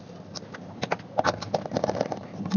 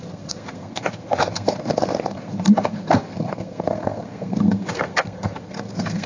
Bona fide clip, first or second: first